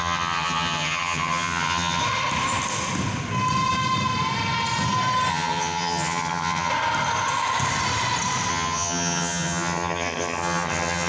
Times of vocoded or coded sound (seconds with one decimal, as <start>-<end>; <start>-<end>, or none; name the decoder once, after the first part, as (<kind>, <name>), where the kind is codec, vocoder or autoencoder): 0.0-2.0 (vocoder, HiFi-GAN); 5.3-6.7; 8.5-11.1